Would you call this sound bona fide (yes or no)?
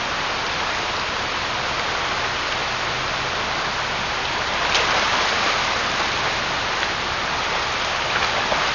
yes